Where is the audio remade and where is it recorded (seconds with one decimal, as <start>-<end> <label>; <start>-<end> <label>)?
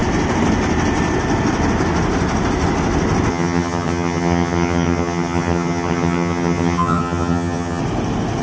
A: 0.0-3.3 recorded; 3.3-7.8 remade; 7.8-8.4 recorded